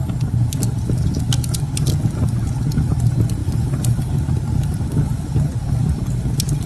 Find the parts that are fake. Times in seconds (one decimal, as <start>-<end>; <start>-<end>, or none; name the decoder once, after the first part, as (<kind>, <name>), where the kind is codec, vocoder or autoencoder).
none